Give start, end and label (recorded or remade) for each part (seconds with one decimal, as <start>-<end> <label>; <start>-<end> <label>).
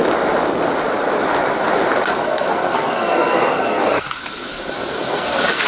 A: 0.0-2.1 recorded; 2.1-5.7 remade